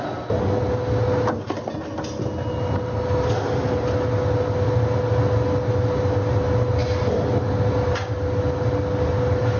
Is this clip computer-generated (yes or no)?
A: no